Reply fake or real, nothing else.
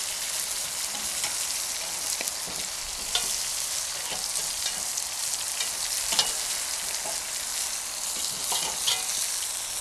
real